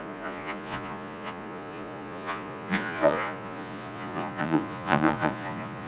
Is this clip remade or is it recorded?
remade